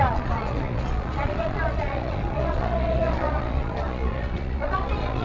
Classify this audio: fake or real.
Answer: fake